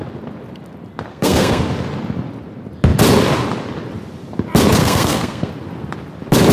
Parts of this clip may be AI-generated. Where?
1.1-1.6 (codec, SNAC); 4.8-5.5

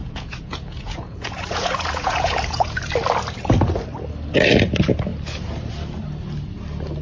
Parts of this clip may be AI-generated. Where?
0.0-2.8 (vocoder, Vocos)

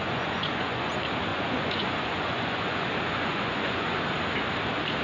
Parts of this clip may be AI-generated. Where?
0.0-0.9 (vocoder, Vocos); 1.3-4.0